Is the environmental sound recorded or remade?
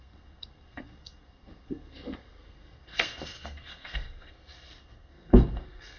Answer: remade